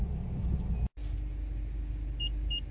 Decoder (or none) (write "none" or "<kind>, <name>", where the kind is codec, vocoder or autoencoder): none